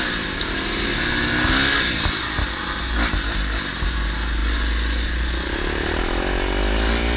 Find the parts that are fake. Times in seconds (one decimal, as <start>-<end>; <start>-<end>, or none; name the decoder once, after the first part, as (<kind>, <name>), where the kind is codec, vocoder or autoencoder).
none